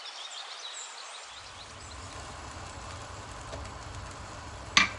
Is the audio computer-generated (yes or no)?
no